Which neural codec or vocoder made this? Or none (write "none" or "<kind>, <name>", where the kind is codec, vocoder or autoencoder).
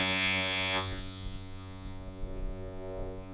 vocoder, Vocos